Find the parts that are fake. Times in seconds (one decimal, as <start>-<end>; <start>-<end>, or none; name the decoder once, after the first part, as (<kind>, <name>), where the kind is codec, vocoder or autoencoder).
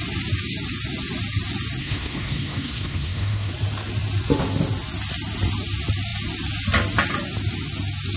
1.8-3.5 (codec, SNAC)